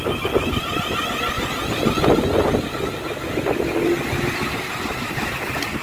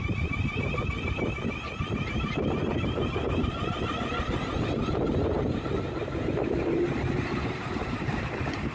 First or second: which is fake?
second